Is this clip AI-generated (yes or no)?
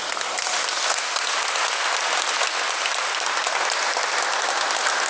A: no